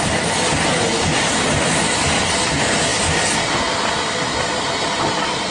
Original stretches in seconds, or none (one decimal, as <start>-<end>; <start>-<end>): 0.0-5.5